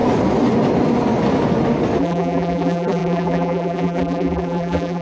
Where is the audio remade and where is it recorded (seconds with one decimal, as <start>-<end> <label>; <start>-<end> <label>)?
0.0-2.0 recorded; 2.0-5.0 remade